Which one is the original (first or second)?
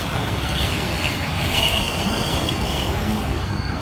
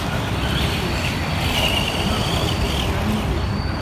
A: second